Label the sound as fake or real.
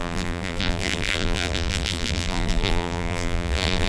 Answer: fake